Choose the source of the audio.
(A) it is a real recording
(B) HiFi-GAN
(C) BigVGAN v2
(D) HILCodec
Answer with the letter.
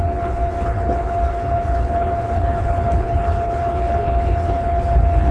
D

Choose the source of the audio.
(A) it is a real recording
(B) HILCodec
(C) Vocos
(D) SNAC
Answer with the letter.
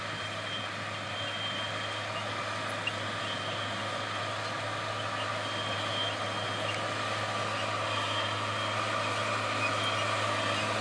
A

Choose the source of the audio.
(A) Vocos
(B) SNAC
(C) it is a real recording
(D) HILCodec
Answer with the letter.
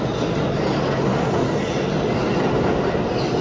C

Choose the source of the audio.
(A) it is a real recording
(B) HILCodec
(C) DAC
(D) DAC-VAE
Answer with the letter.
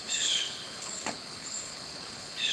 B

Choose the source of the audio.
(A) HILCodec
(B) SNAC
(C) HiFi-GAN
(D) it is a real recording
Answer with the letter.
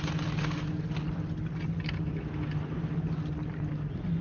D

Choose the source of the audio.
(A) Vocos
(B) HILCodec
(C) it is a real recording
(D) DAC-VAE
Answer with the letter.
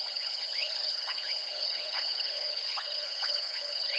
B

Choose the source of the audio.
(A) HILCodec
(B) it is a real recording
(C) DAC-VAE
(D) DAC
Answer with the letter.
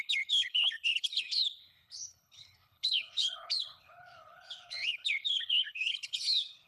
A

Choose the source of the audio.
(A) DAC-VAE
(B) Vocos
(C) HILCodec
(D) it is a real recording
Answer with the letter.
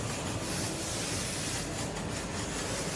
D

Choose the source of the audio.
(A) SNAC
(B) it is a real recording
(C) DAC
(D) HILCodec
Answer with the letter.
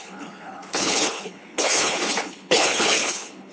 D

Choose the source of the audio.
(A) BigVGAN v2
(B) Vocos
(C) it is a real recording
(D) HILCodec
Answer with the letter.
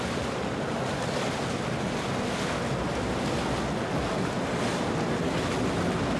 C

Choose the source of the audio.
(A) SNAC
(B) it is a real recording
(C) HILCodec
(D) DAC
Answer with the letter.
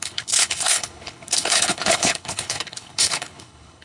C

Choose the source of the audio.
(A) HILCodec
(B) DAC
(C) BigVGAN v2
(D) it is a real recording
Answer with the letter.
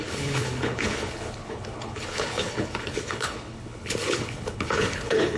A